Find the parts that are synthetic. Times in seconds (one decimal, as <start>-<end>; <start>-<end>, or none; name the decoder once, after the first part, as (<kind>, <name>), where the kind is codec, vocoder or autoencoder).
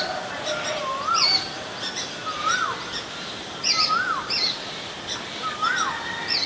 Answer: none